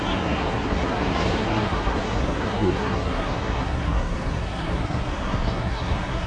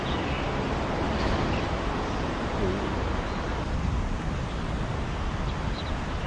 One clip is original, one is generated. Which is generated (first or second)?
first